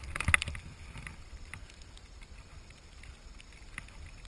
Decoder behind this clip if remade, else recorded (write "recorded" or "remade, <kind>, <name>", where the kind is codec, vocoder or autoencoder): recorded